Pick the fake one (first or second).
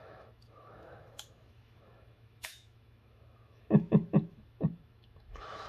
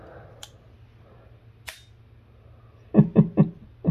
first